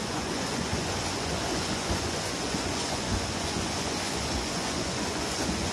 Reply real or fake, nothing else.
fake